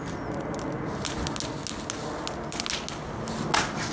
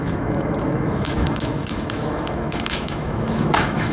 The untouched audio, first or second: first